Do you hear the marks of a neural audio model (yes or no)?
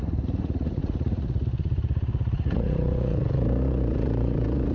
yes